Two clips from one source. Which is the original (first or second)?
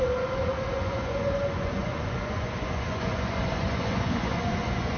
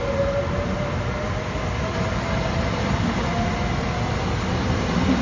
second